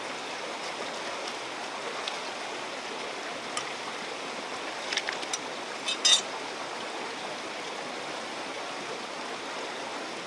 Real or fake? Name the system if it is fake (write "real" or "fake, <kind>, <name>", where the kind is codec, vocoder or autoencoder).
real